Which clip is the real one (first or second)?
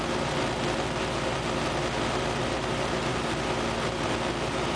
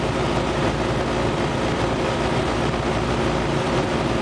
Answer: first